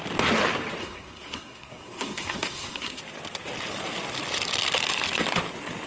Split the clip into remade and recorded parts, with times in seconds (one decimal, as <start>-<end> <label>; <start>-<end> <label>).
0.0-0.8 recorded; 0.8-3.0 remade; 3.0-5.9 recorded